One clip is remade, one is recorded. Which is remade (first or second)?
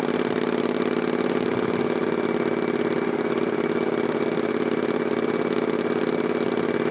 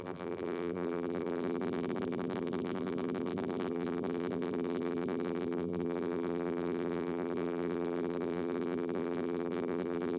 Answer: second